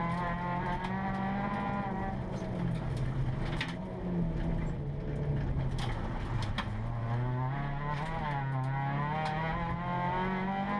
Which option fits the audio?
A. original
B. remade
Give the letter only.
A